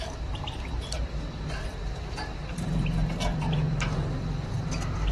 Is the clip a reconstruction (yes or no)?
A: yes